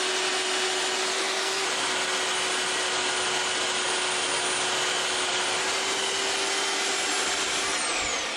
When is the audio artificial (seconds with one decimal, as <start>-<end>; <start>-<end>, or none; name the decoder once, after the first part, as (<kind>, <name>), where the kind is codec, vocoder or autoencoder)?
1.1-1.6 (codec, SNAC)

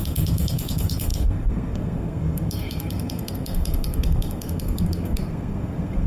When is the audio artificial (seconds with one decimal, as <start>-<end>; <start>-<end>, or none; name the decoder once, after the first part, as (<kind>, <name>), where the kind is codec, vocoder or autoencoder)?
0.0-6.1 (codec, SNAC)

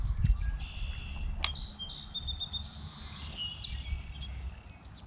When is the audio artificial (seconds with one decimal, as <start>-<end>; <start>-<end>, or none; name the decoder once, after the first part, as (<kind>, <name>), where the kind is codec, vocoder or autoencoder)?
none

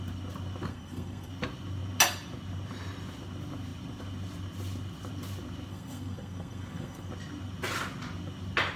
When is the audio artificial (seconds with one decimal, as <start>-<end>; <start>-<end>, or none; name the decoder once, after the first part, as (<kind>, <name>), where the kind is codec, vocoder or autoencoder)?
0.7-1.3 (codec, SNAC); 5.7-7.1

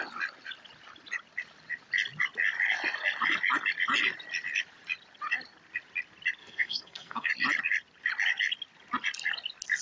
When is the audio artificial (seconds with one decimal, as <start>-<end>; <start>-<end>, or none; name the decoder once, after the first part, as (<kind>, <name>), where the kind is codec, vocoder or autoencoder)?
6.4-7.3 (codec, SNAC)

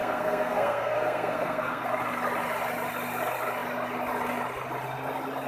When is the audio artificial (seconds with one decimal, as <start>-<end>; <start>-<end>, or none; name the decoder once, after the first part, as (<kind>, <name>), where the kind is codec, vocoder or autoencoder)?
0.0-1.9 (codec, SNAC)

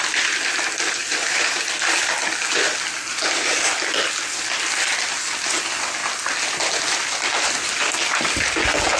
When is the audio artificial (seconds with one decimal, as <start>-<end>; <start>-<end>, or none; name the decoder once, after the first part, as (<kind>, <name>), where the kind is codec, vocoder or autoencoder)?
none